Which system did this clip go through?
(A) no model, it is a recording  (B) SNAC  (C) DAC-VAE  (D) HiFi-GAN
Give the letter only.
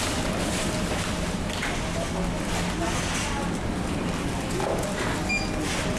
A